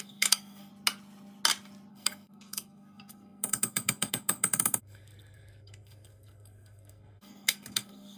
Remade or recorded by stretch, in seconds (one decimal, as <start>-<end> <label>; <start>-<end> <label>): 0.0-0.7 remade; 0.7-1.9 recorded; 1.9-8.2 remade